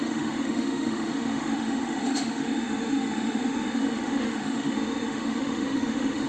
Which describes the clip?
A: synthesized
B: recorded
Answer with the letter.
A